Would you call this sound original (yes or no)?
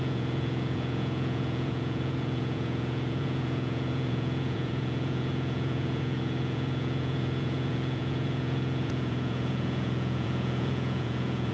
no